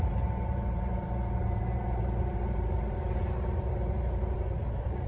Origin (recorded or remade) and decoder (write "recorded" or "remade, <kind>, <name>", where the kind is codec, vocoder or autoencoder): remade, vocoder, BigVGAN v2